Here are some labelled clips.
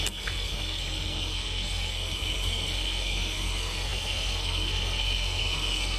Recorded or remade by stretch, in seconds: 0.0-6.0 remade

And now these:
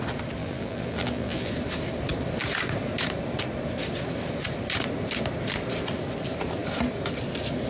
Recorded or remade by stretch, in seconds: 0.0-0.4 recorded; 0.4-1.5 remade; 1.5-7.7 recorded

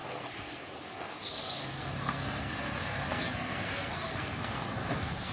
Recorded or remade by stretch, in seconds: 0.0-5.3 remade

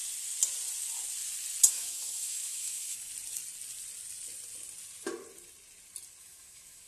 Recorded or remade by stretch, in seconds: 0.0-1.7 recorded; 1.7-3.1 remade; 3.1-6.2 recorded; 6.2-6.9 remade

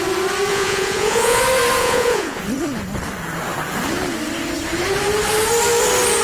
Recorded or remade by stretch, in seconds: 0.0-0.5 recorded; 0.5-1.4 remade; 1.4-1.8 recorded; 1.8-2.4 remade; 2.4-6.2 recorded

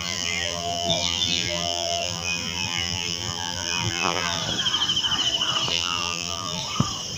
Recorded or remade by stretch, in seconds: 0.0-4.4 remade; 4.4-5.7 recorded; 5.7-6.6 remade; 6.6-7.2 recorded